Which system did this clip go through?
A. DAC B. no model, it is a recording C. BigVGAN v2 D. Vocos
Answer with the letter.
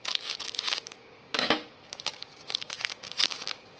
A